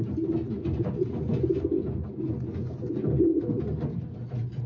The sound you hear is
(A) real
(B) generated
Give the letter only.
A